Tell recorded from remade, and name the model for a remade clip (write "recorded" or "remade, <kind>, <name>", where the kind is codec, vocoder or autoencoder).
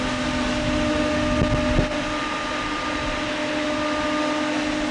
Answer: recorded